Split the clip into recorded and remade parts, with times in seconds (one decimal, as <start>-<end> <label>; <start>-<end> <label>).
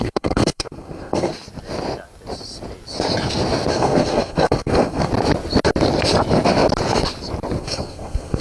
0.0-1.3 remade; 1.3-3.7 recorded; 3.7-5.1 remade; 5.1-7.6 recorded; 7.6-8.4 remade